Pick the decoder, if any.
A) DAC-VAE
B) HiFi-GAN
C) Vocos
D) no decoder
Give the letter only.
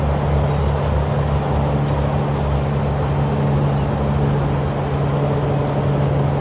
D